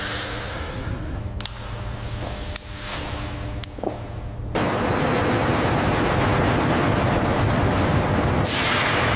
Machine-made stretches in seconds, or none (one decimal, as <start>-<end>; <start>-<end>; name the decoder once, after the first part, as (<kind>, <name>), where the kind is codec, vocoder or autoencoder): 0.5-1.2 (codec, SNAC)